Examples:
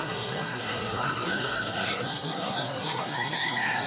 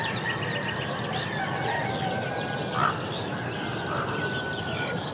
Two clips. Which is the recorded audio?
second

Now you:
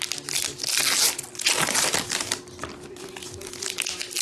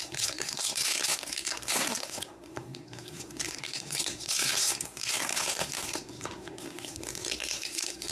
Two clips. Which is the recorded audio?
first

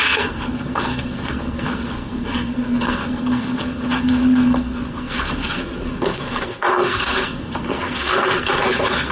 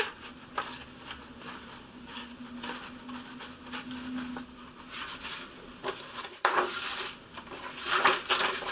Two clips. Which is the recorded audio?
second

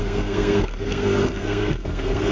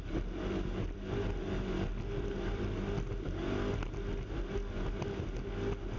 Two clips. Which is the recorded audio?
second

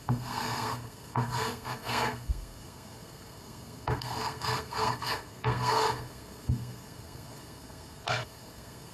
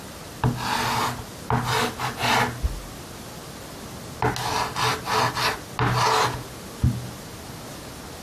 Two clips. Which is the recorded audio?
second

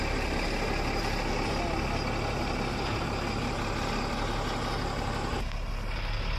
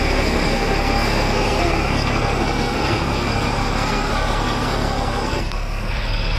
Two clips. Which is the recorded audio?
first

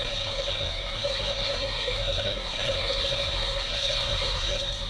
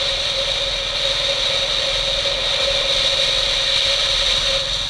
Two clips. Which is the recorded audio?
second